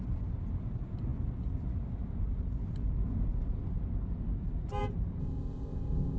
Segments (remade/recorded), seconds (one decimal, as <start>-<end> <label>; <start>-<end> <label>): 0.0-5.2 recorded; 5.2-6.2 remade